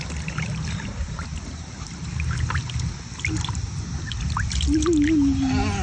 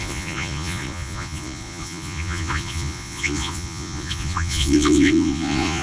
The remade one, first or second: second